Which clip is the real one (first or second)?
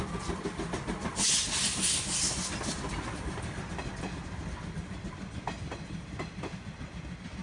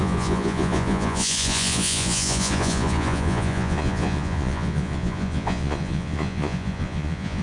first